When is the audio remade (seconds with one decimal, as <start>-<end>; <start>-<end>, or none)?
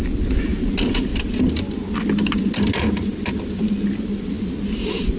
none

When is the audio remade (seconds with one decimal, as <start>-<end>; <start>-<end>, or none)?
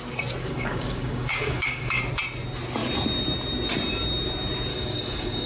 0.4-2.0; 4.7-5.5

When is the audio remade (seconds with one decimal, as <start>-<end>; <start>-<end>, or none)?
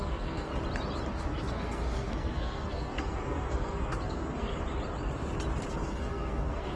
0.0-0.5; 1.1-4.5; 5.7-6.8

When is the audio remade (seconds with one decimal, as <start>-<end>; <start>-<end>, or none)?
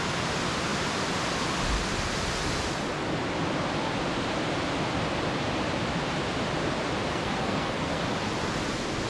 7.1-8.0